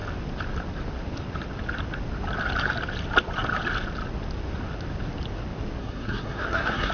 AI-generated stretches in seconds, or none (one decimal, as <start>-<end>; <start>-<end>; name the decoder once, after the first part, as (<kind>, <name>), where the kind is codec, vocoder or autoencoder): 5.8-6.9 (codec, SNAC)